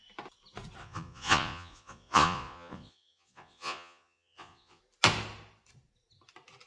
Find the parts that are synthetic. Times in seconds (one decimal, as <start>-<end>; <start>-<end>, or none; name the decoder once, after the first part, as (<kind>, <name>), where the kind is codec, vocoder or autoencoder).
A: 0.8-4.8 (vocoder, Vocos)